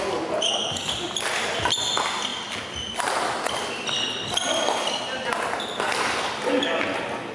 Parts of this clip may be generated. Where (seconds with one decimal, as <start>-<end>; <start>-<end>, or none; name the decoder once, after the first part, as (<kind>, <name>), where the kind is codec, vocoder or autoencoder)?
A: none